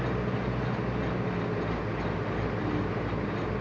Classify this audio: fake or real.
real